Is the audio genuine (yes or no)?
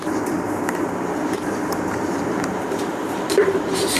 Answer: no